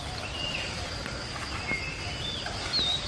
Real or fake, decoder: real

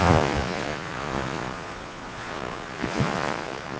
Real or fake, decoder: fake, vocoder, Vocos